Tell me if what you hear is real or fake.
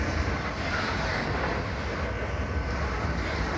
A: real